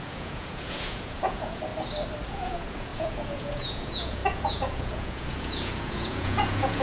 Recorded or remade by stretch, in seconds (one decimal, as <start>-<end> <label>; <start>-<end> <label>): 0.0-1.7 remade; 1.7-2.3 recorded; 2.3-6.8 remade